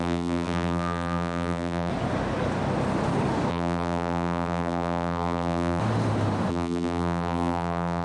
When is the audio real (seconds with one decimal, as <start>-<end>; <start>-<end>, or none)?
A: 1.9-3.5; 5.8-6.5